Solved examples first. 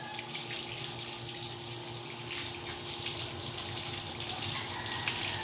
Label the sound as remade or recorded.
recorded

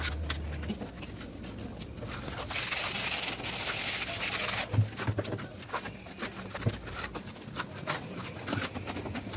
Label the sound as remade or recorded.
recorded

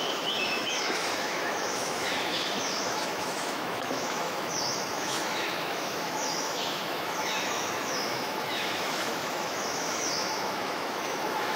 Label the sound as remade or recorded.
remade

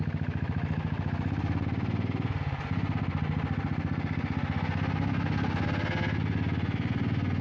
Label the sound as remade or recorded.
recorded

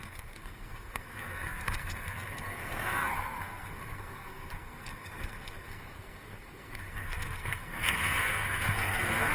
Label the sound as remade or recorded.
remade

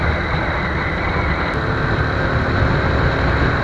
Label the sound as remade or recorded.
recorded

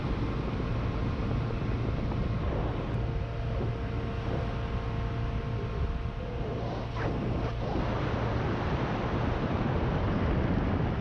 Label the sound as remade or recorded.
recorded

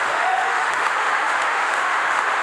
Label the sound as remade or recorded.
remade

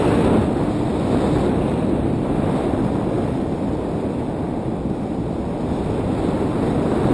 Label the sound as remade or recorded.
recorded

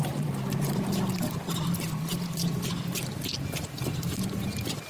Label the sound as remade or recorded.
recorded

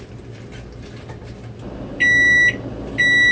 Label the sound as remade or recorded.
recorded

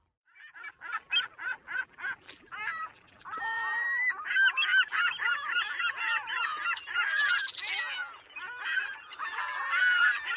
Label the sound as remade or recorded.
remade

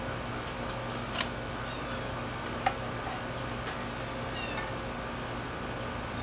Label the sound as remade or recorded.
recorded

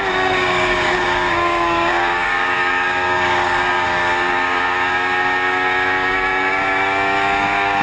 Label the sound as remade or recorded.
remade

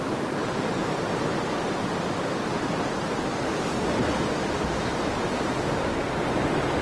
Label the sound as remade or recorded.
recorded